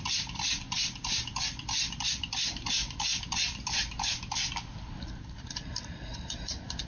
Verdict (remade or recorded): remade